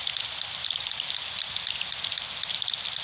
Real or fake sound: real